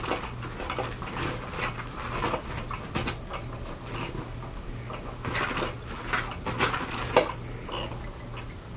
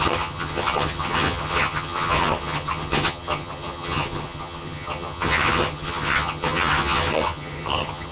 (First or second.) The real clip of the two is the first